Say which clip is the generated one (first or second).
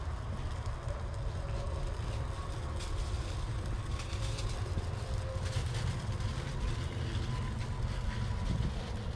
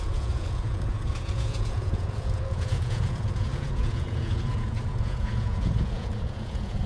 second